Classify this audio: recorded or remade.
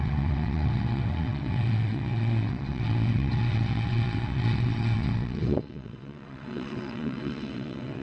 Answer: remade